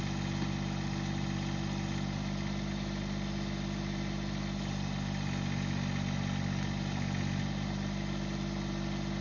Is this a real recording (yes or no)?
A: yes